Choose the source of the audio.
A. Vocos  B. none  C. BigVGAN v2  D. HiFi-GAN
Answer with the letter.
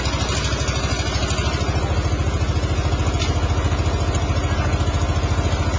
B